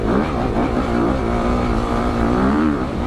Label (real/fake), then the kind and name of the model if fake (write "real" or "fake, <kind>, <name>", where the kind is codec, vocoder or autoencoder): fake, vocoder, BigVGAN v2